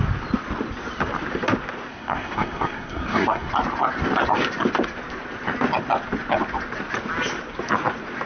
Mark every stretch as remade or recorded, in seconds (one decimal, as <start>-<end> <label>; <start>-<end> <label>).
0.0-1.9 recorded; 1.9-3.5 remade; 3.5-8.3 recorded